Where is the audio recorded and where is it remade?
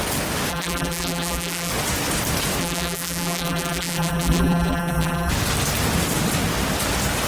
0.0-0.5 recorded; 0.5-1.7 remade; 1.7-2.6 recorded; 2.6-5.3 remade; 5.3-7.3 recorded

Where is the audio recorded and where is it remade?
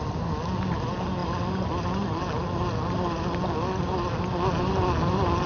0.0-1.2 recorded; 1.2-4.2 remade; 4.2-5.5 recorded